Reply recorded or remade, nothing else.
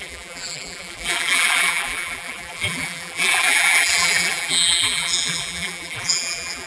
remade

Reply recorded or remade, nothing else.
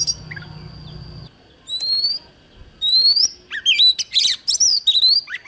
recorded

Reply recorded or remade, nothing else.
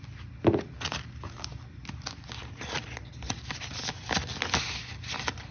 recorded